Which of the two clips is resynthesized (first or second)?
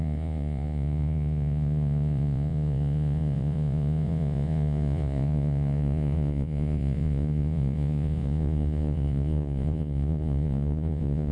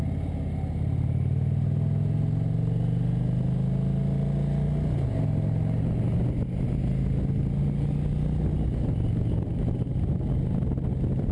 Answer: first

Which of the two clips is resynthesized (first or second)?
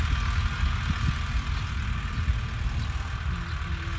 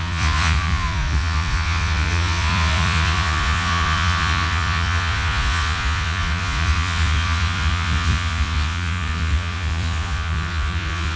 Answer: second